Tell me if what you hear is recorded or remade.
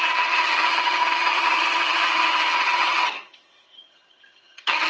remade